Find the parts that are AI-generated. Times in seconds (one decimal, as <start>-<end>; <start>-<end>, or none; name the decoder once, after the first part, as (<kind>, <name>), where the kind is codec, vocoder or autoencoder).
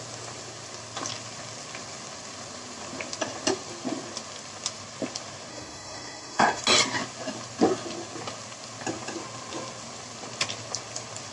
5.5-6.6 (codec, SNAC)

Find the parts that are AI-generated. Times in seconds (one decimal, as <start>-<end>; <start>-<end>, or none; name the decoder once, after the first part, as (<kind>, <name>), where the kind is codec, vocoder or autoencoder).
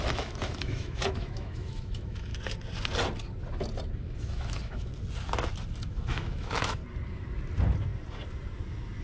0.0-2.3 (autoencoder, DAC-VAE); 4.0-4.9; 5.8-6.8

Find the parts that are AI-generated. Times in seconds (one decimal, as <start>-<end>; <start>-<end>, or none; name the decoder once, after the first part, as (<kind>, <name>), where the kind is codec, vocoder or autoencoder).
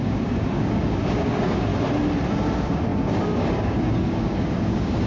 0.0-1.7 (codec, DAC); 2.3-5.1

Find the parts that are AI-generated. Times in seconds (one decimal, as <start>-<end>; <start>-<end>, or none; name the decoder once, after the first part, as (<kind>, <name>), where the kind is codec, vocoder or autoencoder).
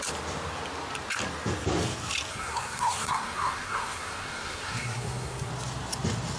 2.3-5.5 (codec, SNAC)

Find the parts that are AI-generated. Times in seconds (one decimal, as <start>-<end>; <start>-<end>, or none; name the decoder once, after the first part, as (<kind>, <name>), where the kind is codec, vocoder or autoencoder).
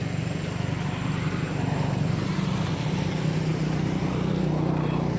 none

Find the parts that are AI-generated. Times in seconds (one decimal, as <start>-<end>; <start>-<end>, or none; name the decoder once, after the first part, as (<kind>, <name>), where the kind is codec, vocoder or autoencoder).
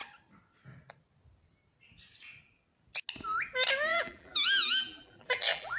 3.9-5.8 (vocoder, BigVGAN v2)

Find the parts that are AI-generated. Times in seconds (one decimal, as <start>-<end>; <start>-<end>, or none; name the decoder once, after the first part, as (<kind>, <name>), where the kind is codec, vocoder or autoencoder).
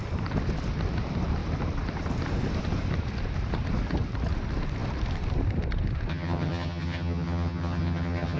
6.1-8.4 (vocoder, HiFi-GAN)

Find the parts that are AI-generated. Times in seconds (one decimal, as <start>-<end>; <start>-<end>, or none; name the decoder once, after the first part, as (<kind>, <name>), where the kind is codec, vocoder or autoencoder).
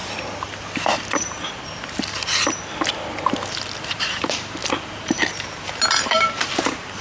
3.9-7.0 (vocoder, BigVGAN v2)